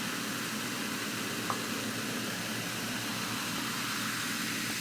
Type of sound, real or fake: real